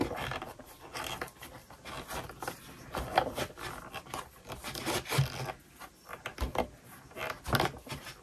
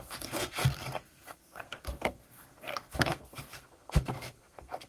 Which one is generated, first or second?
second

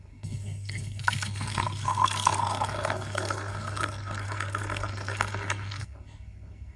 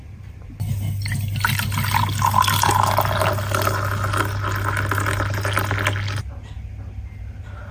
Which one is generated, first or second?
first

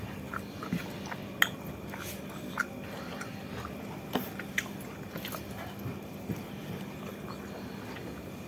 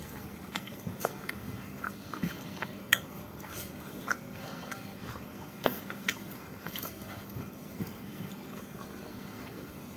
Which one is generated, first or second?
second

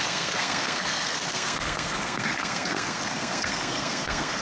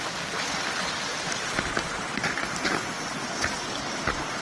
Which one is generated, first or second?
first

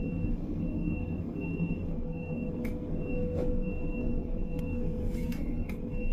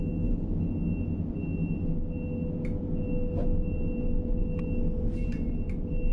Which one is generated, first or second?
first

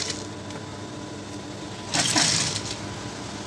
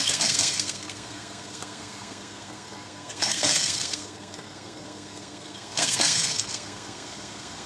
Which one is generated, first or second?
second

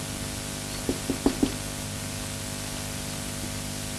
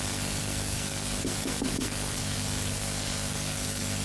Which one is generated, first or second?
second